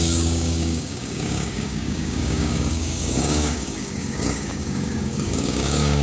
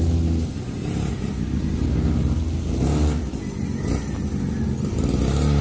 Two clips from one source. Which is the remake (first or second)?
first